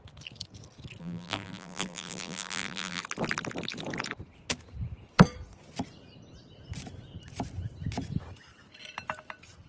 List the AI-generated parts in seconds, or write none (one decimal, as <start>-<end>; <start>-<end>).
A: 1.0-3.0